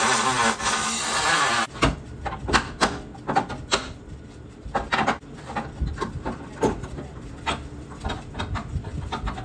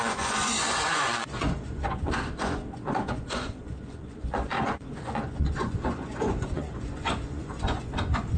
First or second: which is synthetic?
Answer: second